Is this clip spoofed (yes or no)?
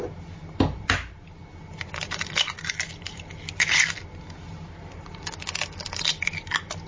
no